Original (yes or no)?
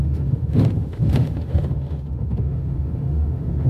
no